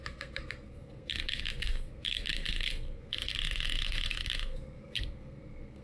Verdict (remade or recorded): remade